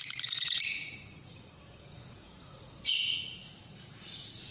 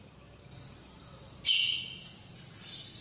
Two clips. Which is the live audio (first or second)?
second